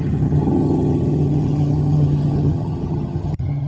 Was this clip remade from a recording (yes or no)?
yes